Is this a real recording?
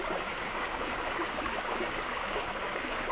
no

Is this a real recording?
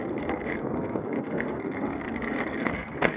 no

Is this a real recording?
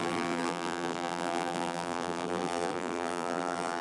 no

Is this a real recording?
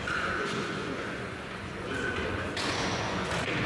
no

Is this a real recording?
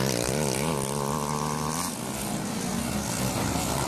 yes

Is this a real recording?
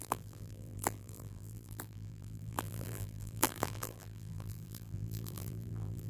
no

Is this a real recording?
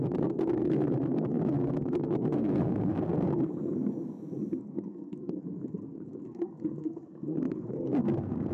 no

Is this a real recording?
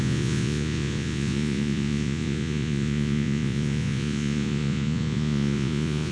no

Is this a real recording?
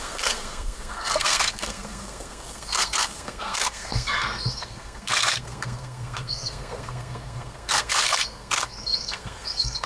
no